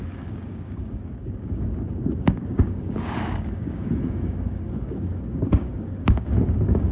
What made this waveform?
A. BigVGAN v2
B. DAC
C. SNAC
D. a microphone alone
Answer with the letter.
B